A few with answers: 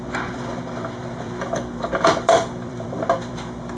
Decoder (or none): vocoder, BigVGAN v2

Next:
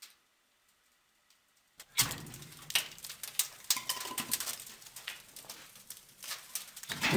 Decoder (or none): none